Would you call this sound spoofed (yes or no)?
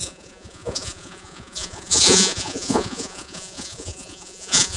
yes